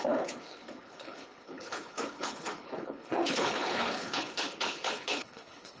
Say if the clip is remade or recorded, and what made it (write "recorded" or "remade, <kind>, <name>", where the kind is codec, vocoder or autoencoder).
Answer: remade, codec, HILCodec